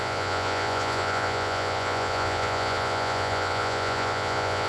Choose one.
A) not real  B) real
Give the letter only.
A